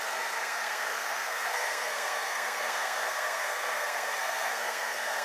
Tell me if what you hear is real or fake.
fake